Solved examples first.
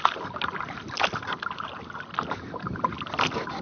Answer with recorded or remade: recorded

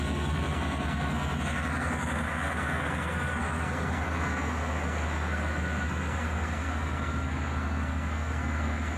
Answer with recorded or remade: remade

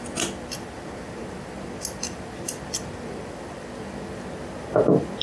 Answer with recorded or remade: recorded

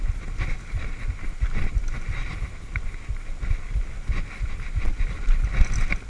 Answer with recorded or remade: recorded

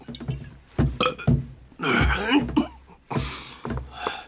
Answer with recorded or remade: recorded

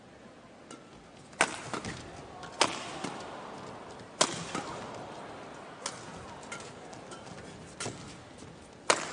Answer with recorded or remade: recorded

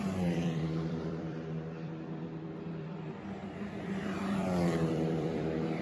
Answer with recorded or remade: remade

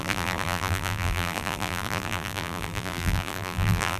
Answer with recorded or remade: remade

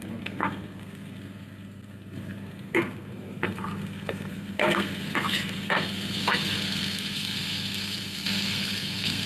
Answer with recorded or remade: remade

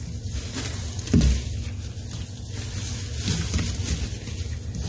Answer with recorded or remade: recorded